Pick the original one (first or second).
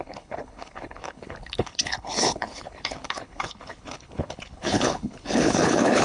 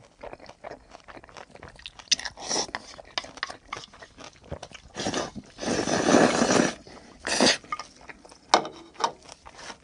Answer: second